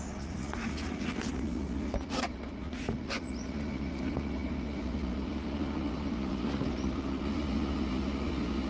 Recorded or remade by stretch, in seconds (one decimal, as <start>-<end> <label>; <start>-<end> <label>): 0.0-8.7 remade